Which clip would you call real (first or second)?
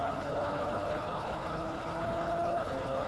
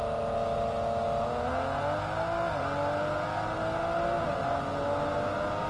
second